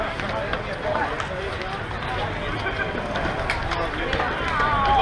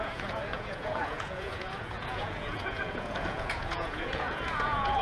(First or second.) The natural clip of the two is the first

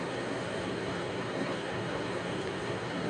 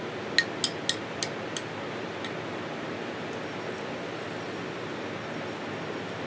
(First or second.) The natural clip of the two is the second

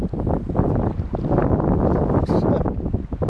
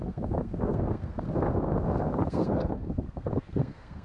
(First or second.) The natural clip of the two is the first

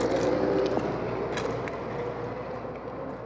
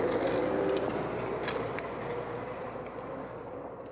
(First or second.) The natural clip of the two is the first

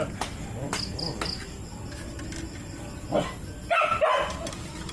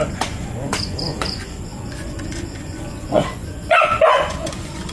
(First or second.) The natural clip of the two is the first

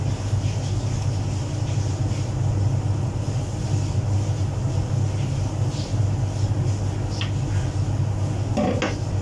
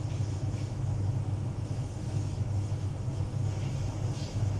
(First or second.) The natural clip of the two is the first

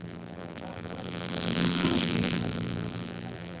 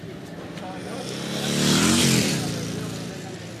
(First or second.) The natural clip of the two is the second